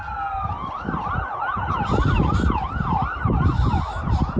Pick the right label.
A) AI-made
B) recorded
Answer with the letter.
B